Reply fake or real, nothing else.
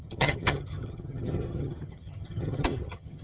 fake